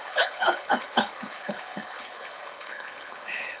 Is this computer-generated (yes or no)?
yes